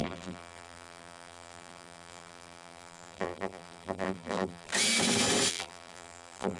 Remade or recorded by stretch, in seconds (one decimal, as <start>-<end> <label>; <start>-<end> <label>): 0.0-4.7 remade; 4.7-5.5 recorded; 5.5-6.6 remade